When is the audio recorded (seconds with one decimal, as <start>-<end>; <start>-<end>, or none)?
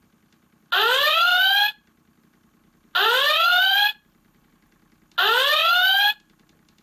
0.0-3.5; 4.5-6.8